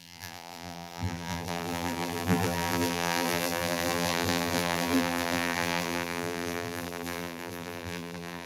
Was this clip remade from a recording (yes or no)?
yes